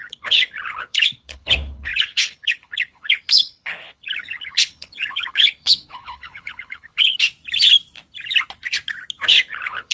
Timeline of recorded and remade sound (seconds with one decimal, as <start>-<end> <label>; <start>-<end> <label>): 0.0-7.3 remade; 7.3-9.5 recorded; 9.5-9.9 remade